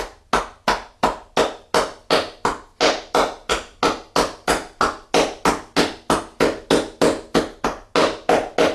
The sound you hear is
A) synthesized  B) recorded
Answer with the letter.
B